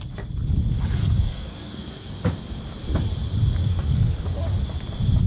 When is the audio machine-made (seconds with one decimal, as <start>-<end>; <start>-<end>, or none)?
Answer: 1.0-2.1; 3.6-4.4